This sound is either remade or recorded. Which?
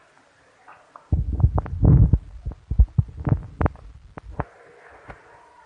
recorded